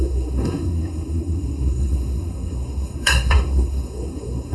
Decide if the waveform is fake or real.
fake